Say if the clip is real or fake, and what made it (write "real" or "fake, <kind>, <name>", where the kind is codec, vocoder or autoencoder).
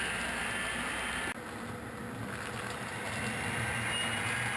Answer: real